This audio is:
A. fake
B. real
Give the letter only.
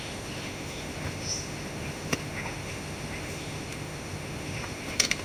A